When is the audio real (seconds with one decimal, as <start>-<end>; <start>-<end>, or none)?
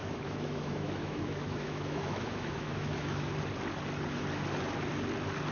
3.3-5.5